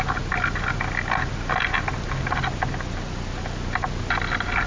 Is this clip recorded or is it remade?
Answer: recorded